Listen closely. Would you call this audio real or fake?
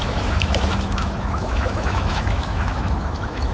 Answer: fake